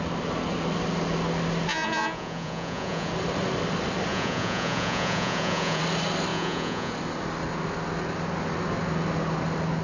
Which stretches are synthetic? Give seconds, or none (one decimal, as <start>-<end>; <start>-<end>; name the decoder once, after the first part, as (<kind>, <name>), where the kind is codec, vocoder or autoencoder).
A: 1.7-3.1 (vocoder, Vocos); 4.1-5.8; 6.3-6.9